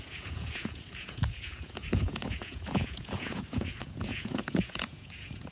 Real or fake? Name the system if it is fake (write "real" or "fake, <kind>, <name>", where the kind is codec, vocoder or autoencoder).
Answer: fake, vocoder, Vocos